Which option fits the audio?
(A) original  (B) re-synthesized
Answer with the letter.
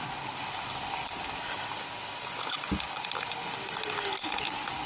A